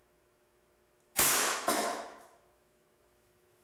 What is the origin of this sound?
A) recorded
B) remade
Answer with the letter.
B